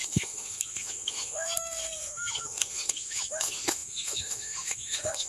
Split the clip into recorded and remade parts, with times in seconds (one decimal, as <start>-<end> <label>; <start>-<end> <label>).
0.0-5.3 remade

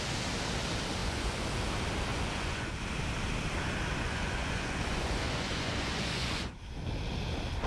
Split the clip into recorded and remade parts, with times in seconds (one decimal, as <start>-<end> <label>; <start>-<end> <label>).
0.0-1.0 recorded; 1.0-1.5 remade; 1.5-2.1 recorded; 2.1-2.7 remade; 2.7-4.0 recorded; 4.0-6.5 remade; 6.5-7.7 recorded

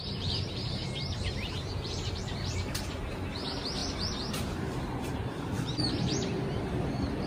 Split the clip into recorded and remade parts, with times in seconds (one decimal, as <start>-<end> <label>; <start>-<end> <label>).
0.0-3.8 remade; 3.8-4.3 recorded; 4.3-7.3 remade